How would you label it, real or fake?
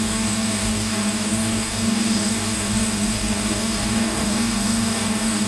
fake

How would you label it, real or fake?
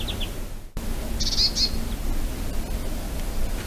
real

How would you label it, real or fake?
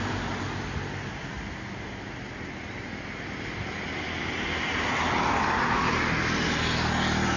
real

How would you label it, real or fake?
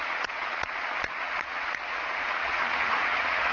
fake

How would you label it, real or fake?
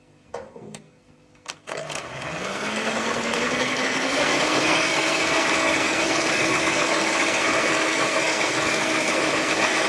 fake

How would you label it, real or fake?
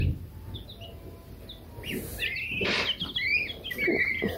real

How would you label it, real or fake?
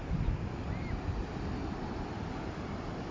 real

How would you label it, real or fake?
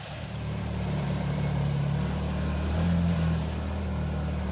fake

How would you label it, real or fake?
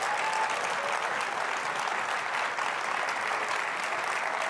real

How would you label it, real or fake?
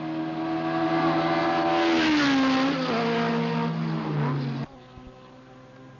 real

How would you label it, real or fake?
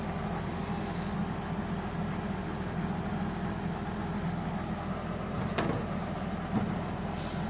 real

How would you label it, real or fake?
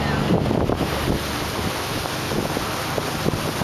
real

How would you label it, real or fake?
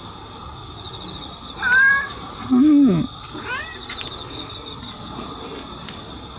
real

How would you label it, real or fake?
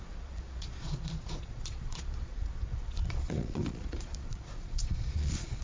fake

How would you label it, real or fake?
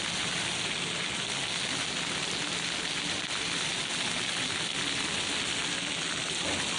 real